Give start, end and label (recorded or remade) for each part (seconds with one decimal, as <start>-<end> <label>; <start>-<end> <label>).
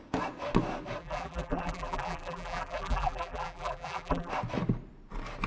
0.0-1.0 recorded; 1.0-4.3 remade; 4.3-5.5 recorded